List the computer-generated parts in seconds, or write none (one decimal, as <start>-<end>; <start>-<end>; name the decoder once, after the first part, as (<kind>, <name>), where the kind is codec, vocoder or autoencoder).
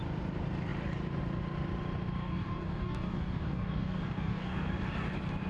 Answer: 2.2-4.7 (codec, DAC)